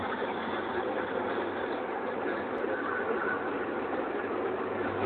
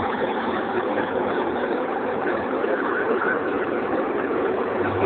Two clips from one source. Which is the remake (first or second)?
second